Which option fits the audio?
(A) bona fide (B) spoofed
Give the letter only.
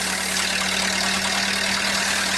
A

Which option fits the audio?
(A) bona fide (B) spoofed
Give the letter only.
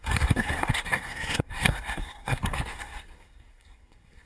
B